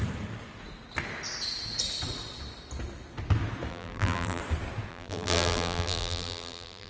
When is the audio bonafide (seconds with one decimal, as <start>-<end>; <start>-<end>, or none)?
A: 0.0-3.7; 4.4-4.9